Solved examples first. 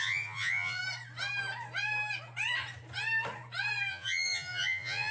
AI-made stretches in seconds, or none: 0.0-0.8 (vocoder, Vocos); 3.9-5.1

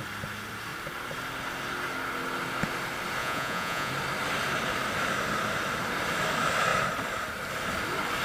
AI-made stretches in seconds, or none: 3.2-3.9 (vocoder, Vocos)

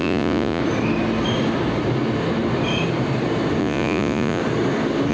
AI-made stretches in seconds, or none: 0.0-0.6 (vocoder, Vocos); 3.6-4.4